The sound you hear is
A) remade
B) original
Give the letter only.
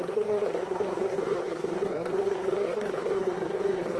A